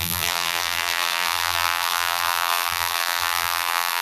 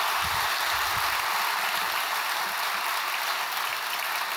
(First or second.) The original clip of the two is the second